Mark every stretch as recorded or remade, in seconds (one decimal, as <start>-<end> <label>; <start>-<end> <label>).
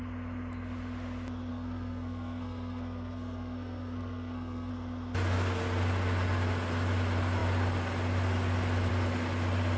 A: 0.0-1.5 recorded; 1.5-4.7 remade; 4.7-9.8 recorded